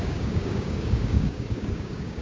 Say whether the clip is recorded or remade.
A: remade